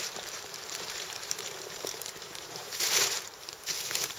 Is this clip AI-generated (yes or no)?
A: yes